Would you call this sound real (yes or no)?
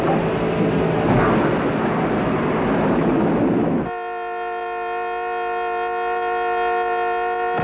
yes